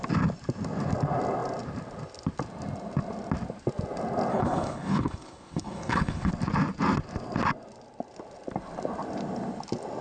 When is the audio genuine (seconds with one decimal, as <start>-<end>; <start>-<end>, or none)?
0.0-4.3; 6.3-10.0